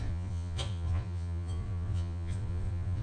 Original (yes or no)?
no